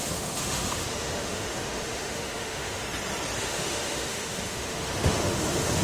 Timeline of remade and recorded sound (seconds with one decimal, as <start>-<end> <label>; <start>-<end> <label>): 0.0-2.8 remade; 2.8-3.4 recorded; 3.4-5.8 remade